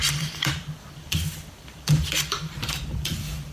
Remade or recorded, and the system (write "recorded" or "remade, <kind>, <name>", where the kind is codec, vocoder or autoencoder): remade, vocoder, BigVGAN v2